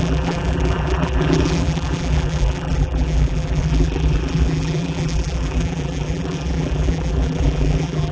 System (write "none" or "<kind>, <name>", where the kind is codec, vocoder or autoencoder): vocoder, BigVGAN v2